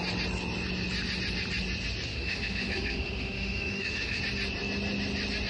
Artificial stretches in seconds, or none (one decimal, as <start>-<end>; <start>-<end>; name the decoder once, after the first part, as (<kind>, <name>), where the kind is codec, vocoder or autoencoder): 2.1-4.2 (autoencoder, DAC-VAE)